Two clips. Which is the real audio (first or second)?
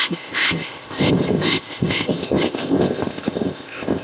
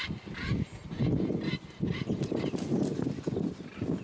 second